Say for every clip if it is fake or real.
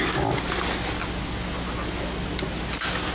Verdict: real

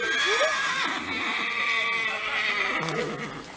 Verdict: real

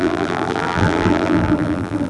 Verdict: fake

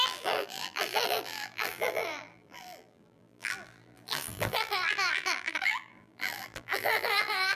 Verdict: fake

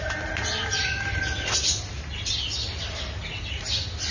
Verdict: real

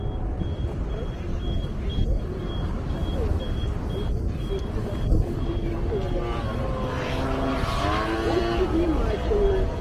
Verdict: real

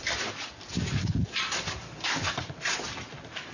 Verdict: fake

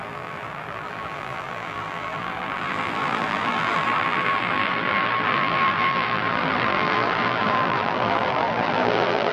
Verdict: fake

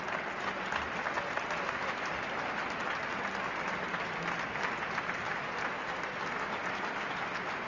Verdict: real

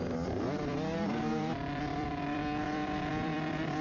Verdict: fake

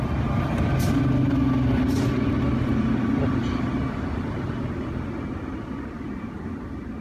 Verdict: real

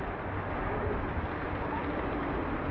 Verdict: real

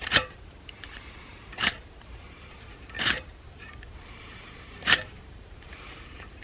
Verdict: fake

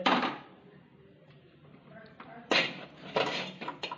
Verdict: fake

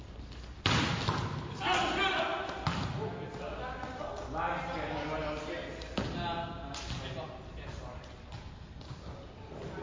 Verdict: real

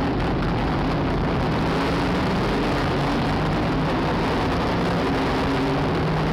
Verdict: real